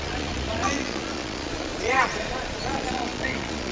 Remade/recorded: remade